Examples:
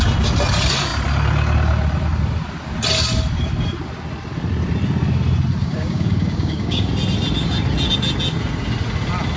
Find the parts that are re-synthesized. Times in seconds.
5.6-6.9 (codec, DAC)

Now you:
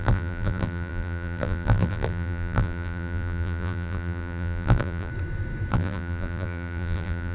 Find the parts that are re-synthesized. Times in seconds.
0.0-5.1 (vocoder, BigVGAN v2); 5.7-7.3

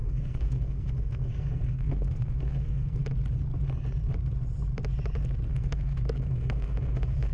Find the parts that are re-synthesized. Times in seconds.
0.0-3.0 (codec, SNAC); 5.5-7.3

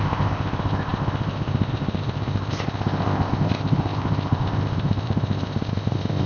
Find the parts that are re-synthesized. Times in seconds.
0.0-6.3 (codec, ZipCodec)

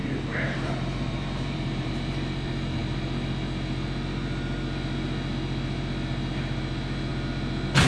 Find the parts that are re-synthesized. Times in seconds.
0.0-1.9 (vocoder, BigVGAN v2)

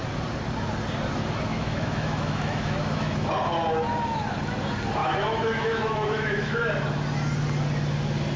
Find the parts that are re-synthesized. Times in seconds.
1.5-3.3 (autoencoder, DAC-VAE); 5.0-6.7

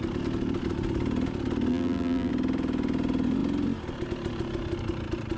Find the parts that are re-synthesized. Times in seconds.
1.7-2.3 (vocoder, BigVGAN v2)

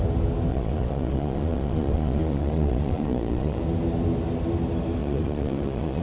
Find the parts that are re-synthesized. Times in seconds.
0.5-3.6 (vocoder, Vocos); 5.0-6.0